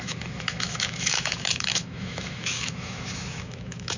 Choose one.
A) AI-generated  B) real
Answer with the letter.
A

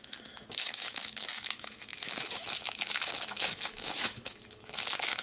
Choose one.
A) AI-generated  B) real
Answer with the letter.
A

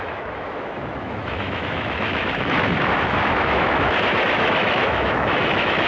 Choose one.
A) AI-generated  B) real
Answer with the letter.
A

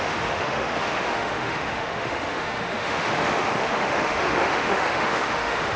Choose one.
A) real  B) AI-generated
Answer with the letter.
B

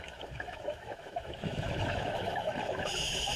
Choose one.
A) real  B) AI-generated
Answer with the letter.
B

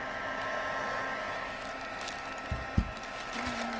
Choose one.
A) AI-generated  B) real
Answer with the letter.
B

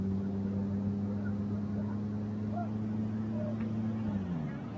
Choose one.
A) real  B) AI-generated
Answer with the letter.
A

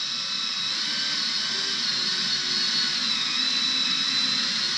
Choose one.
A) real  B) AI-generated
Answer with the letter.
A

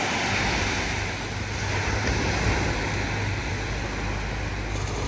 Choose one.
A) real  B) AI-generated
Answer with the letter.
A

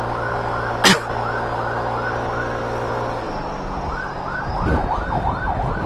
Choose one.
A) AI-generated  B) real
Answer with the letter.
B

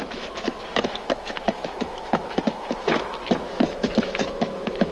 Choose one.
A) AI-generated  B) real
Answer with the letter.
A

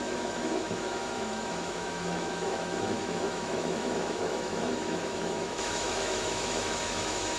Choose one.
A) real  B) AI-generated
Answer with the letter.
B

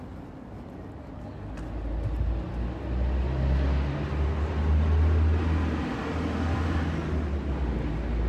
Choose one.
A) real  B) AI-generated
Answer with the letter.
A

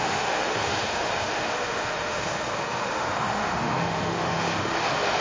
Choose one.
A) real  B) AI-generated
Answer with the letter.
B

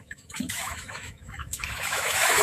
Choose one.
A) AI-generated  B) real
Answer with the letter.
A